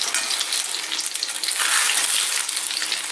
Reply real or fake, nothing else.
real